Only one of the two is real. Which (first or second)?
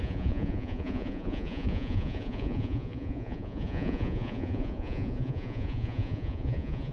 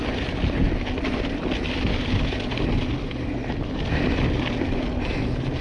second